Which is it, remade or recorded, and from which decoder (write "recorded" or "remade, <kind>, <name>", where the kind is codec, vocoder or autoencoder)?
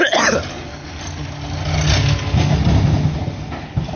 recorded